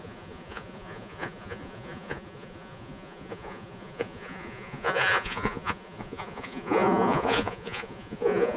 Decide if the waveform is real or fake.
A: fake